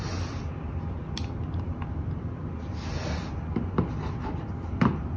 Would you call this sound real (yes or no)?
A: yes